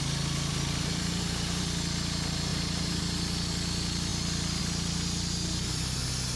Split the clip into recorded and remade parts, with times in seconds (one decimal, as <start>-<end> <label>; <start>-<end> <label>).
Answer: 0.0-0.5 recorded; 0.5-1.6 remade; 1.6-2.5 recorded; 2.5-3.0 remade; 3.0-6.4 recorded